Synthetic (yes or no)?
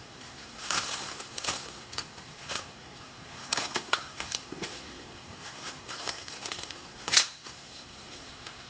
yes